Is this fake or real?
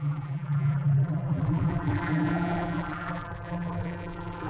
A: fake